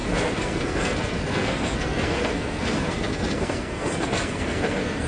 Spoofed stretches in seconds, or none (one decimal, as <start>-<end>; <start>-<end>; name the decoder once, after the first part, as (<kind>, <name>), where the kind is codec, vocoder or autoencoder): 0.0-5.1 (codec, SNAC)